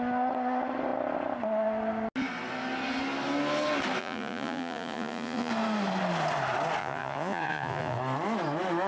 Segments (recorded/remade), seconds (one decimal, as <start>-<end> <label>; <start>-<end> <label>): 0.0-4.0 recorded; 4.0-5.5 remade; 5.5-6.8 recorded; 6.8-8.0 remade; 8.0-8.9 recorded